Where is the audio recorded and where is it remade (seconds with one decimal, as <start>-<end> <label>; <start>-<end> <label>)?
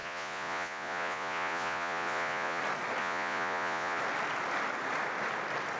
0.0-2.6 remade; 2.6-3.0 recorded; 3.0-4.0 remade; 4.0-5.8 recorded